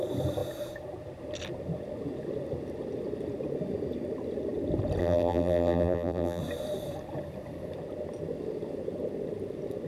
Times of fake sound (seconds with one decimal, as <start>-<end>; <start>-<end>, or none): 5.0-6.4